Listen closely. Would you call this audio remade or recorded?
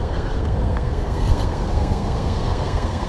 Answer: remade